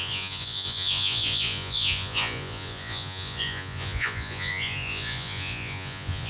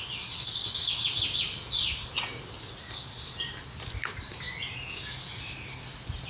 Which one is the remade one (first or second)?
first